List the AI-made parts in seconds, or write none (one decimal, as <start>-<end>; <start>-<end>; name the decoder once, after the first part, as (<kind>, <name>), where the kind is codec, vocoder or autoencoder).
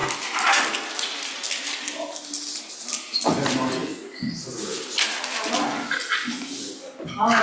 none